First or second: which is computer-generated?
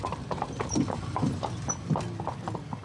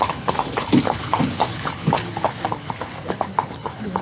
second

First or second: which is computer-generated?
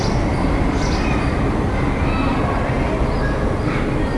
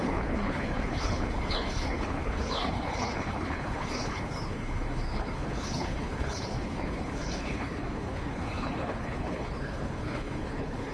second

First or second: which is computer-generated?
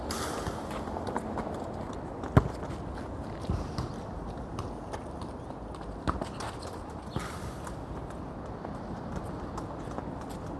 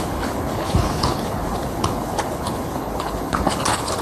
second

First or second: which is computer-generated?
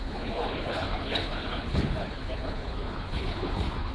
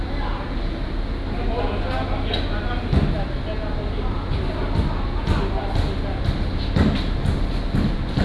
first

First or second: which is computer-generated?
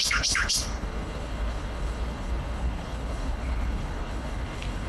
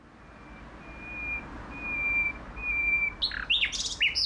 first